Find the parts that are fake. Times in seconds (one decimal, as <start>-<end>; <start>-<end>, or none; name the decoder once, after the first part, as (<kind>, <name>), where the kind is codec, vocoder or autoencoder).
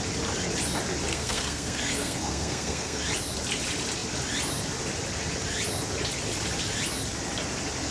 1.1-3.0 (codec, SNAC)